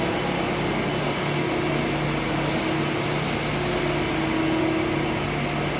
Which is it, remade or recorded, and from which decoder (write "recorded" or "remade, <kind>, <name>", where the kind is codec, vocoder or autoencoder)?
recorded